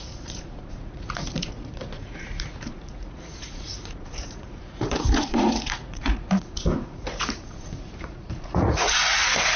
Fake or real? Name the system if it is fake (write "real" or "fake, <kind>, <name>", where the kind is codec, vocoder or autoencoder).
fake, vocoder, Vocos